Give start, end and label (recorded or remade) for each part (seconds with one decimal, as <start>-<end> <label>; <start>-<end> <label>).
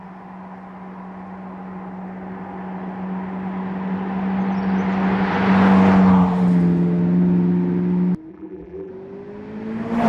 0.0-8.3 recorded; 8.3-8.9 remade; 8.9-10.1 recorded